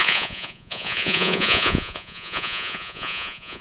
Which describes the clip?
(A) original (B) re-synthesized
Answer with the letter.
B